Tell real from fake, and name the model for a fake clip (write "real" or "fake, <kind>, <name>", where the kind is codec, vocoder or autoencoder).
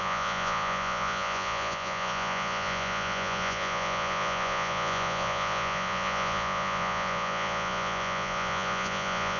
fake, vocoder, Vocos